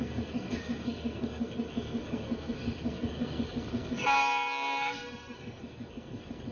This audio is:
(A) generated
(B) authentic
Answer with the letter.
A